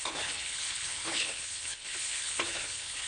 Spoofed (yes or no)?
yes